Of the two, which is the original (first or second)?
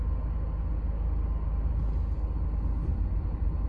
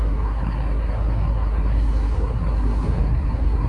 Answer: first